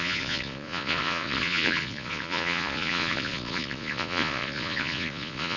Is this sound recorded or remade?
remade